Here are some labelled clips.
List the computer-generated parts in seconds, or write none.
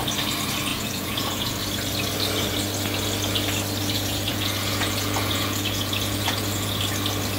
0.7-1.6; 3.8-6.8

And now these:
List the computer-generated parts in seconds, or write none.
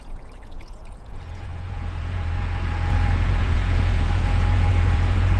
0.0-5.4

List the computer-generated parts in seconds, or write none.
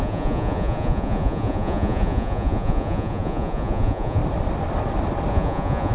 0.0-4.2; 5.3-5.9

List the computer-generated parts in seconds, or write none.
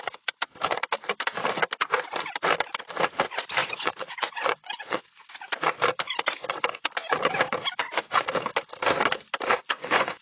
3.6-5.0; 9.7-10.2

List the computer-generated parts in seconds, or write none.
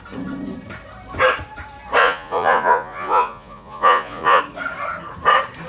2.0-4.4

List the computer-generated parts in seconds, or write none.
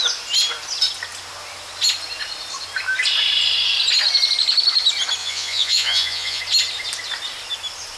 5.2-6.4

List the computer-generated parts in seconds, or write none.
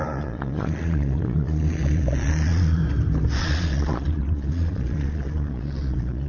0.0-2.8; 3.4-6.3